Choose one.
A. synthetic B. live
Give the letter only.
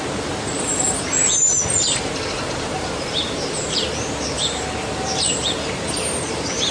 A